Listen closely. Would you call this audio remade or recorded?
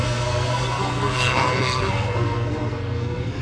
remade